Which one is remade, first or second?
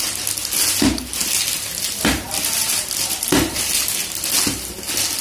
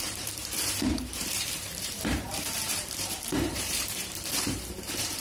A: second